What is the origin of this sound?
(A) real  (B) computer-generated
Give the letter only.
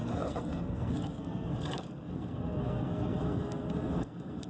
B